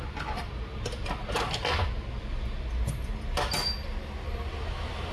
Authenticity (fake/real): real